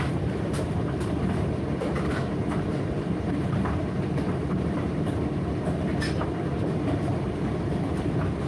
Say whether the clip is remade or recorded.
remade